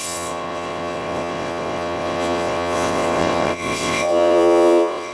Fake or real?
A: fake